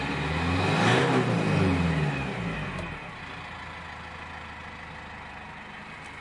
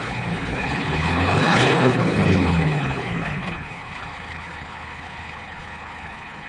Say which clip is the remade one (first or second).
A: second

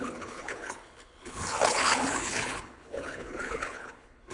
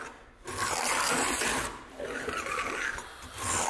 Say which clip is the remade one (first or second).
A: first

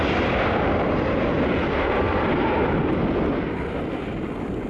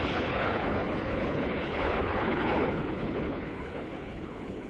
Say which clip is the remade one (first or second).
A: second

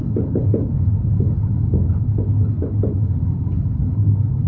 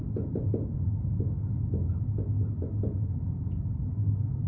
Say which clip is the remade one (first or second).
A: first